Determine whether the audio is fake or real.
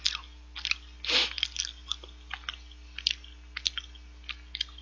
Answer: real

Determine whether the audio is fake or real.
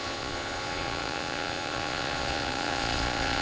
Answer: fake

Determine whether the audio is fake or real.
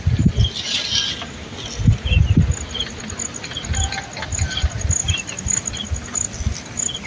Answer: real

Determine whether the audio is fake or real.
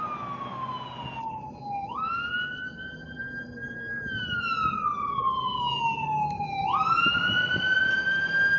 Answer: real